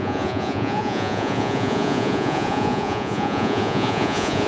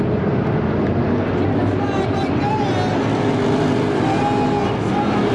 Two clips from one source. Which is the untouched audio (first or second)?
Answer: second